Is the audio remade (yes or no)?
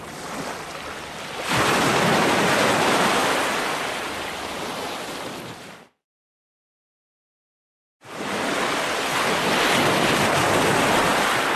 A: no